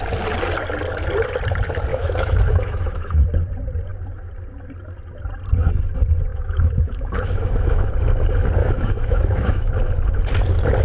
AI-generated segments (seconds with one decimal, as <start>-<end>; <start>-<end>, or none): 1.9-3.2; 6.3-7.9; 8.6-9.7